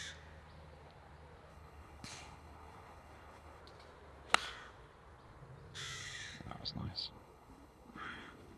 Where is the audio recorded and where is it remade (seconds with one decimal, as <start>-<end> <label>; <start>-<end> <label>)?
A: 0.0-1.5 recorded; 1.5-3.6 remade; 3.6-6.0 recorded; 6.0-8.6 remade